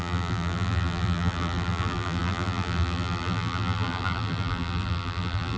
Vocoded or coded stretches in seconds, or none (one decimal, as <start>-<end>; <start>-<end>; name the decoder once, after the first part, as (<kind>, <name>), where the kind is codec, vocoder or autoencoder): 0.0-5.6 (vocoder, BigVGAN v2)